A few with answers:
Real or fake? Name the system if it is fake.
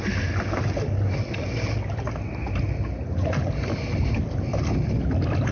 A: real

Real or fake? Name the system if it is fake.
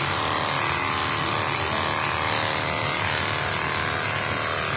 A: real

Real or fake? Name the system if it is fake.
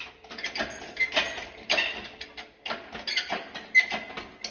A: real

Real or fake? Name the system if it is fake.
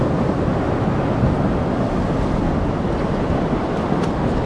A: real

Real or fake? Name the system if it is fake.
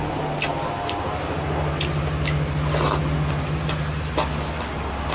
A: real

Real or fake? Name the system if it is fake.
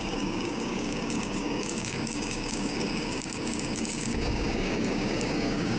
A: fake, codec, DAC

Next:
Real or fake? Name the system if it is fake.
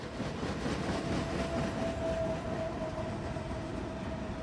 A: real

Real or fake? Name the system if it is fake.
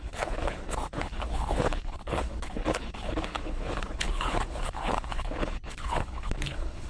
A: fake, codec, HILCodec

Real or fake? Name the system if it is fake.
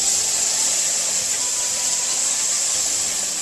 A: real